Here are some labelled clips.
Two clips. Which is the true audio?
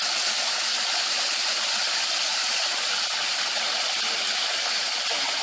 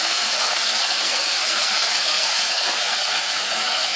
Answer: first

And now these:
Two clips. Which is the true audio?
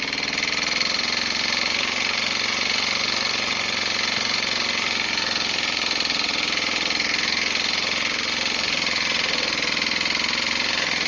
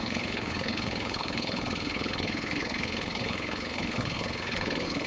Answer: first